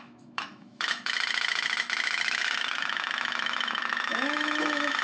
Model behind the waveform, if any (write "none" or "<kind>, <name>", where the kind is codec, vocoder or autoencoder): autoencoder, DAC-VAE